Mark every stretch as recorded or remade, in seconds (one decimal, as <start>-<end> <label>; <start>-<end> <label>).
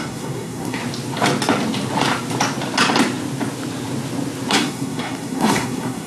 0.0-0.8 remade; 0.8-4.5 recorded; 4.5-6.1 remade